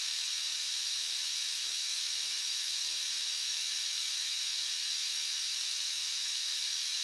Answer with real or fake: fake